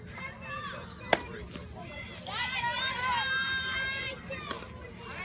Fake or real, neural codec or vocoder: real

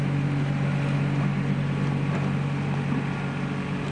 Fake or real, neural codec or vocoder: real